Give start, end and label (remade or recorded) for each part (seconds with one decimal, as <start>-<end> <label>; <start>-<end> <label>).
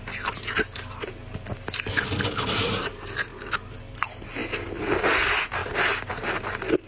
0.0-4.4 recorded; 4.4-4.9 remade; 4.9-6.9 recorded